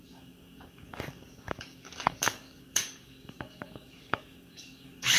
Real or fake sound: fake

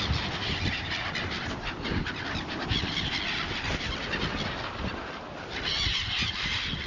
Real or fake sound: real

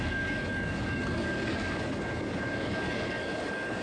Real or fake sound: fake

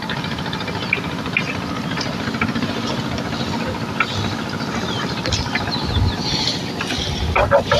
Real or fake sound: real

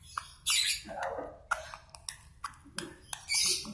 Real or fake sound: real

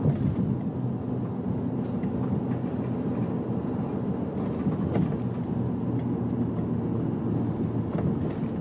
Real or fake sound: real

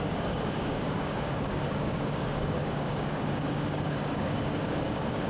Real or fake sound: fake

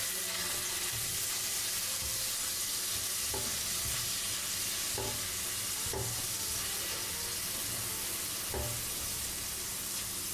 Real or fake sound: real